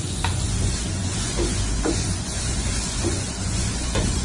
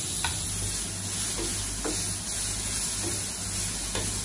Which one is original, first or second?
second